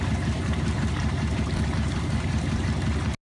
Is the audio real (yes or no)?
yes